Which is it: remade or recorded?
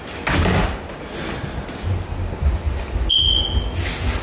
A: recorded